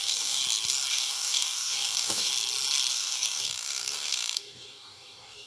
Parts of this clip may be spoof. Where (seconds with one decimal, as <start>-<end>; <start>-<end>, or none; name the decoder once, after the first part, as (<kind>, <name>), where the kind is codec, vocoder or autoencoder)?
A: 0.0-0.4 (codec, DAC); 0.9-2.3; 2.9-5.5